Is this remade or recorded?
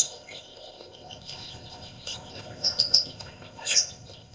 remade